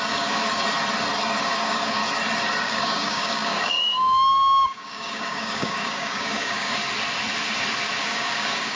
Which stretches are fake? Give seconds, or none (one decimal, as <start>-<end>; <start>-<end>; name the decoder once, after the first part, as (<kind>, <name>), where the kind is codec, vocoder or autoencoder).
0.0-0.4 (codec, DAC); 1.4-2.0; 2.6-6.8; 8.0-8.8